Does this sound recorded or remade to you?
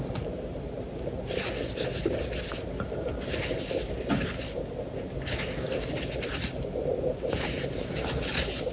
recorded